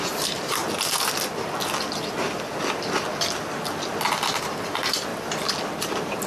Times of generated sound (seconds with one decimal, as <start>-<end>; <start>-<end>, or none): 0.0-0.6; 4.4-5.1; 5.8-6.3